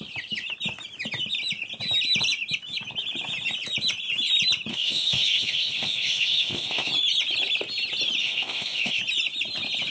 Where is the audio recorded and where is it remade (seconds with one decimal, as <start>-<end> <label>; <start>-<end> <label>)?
0.0-4.7 recorded; 4.7-6.9 remade; 6.9-8.2 recorded; 8.2-9.0 remade; 9.0-9.9 recorded